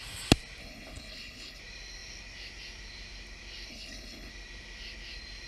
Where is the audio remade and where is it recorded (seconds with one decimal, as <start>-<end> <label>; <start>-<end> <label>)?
0.0-0.6 recorded; 0.6-1.6 remade; 1.6-3.7 recorded; 3.7-4.3 remade; 4.3-5.5 recorded